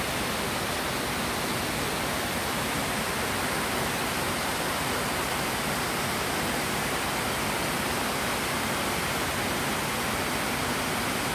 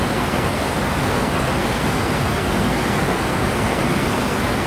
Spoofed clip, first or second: second